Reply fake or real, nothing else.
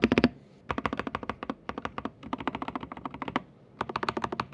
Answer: real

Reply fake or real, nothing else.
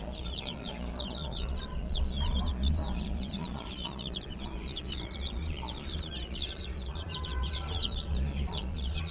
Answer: fake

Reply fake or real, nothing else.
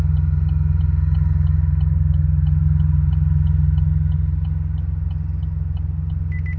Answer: real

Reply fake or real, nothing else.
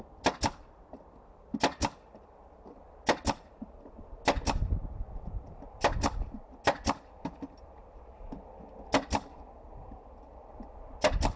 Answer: real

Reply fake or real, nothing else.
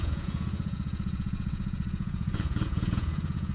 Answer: fake